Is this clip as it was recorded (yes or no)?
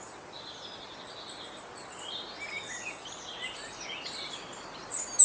yes